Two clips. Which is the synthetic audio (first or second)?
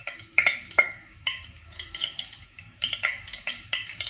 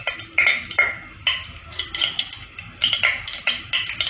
first